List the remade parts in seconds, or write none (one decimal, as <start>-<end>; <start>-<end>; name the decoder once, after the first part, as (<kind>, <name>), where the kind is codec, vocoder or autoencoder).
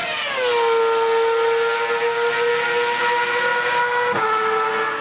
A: none